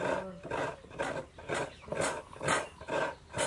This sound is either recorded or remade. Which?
recorded